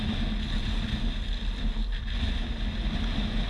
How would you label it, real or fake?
real